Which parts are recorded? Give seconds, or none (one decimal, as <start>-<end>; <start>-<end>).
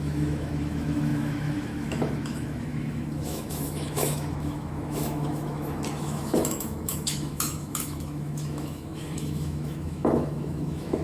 none